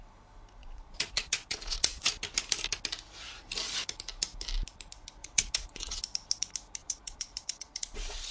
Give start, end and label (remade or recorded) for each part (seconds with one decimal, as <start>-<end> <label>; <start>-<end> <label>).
0.0-0.6 recorded; 0.6-2.1 remade; 2.1-5.2 recorded; 5.2-6.0 remade; 6.0-6.8 recorded; 6.8-8.3 remade